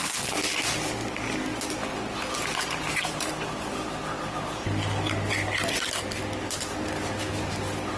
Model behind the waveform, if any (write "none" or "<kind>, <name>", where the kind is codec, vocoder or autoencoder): none